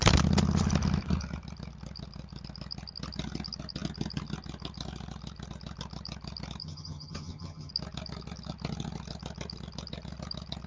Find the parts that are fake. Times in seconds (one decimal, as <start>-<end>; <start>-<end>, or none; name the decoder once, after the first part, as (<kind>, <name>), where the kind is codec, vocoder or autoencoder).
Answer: 6.6-7.7 (vocoder, HiFi-GAN)